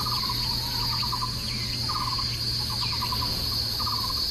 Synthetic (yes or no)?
no